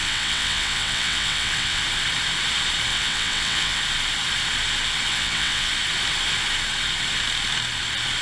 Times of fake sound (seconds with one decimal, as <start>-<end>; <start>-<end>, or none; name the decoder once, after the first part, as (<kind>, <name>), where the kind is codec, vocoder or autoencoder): 0.0-1.8 (vocoder, WaveNeXt); 2.9-3.8; 5.1-5.7